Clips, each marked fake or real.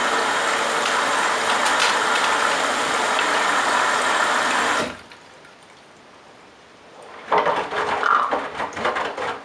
fake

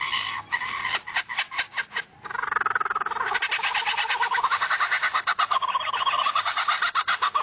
real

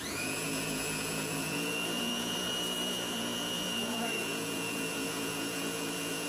fake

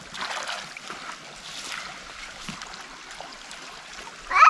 real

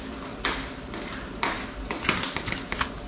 real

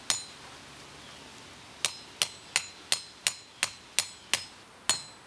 real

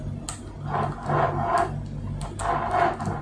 real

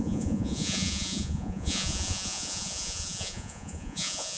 fake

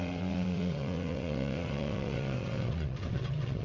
fake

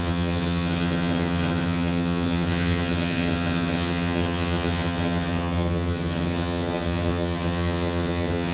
fake